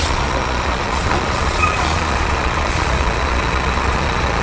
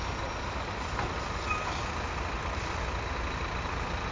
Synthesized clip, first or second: first